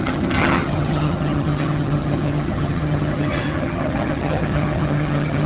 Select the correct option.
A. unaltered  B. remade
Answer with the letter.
B